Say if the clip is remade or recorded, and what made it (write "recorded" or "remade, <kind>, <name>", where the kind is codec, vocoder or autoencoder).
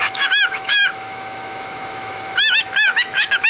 remade, autoencoder, DAC-VAE